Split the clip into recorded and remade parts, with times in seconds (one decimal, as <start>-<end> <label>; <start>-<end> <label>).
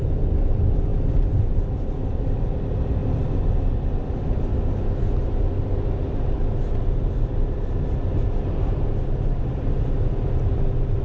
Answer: 0.0-11.0 recorded